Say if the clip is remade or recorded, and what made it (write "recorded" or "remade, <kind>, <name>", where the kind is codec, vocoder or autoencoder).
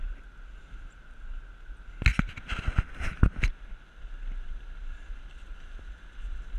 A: recorded